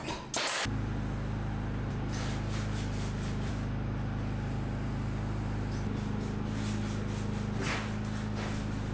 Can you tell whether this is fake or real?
real